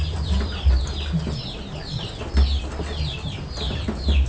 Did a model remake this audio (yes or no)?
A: no